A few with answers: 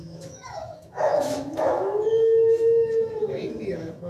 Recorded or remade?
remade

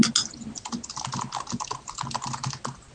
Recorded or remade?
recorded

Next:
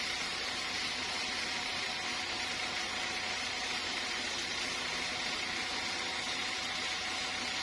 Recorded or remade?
recorded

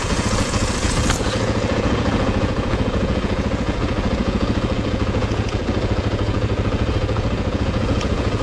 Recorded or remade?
remade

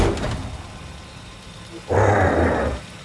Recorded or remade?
recorded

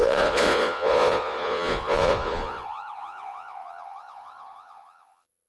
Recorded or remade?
remade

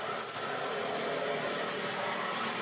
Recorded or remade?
recorded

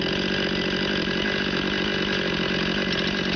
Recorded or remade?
recorded